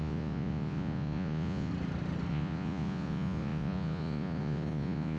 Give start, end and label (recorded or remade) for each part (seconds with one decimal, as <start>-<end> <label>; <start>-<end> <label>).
0.0-1.7 remade; 1.7-2.3 recorded; 2.3-5.2 remade